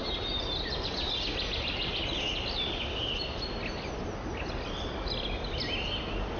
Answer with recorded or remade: recorded